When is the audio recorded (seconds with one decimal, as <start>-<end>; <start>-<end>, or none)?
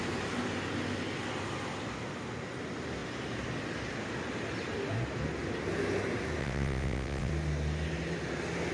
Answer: 0.0-6.4; 7.3-8.7